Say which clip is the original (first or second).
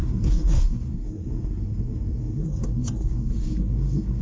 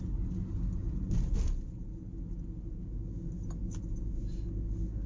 second